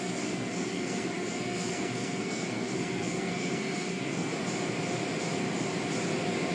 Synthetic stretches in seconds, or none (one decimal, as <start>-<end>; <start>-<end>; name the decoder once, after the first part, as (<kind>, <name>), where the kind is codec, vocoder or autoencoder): 0.0-4.3 (codec, SNAC)